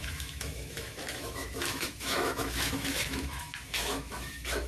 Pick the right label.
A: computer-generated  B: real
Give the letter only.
A